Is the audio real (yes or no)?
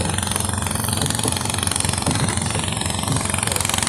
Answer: yes